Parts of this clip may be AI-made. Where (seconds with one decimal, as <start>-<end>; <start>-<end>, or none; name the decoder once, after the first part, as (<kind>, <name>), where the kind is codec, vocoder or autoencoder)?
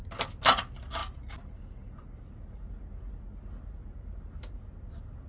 none